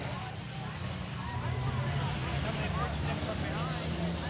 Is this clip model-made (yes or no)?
no